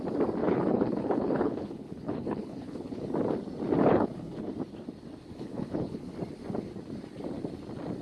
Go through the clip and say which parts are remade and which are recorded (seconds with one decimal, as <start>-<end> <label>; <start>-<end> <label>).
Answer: 0.0-0.4 recorded; 0.4-3.0 remade; 3.0-3.9 recorded; 3.9-4.5 remade; 4.5-5.3 recorded; 5.3-6.1 remade; 6.1-8.0 recorded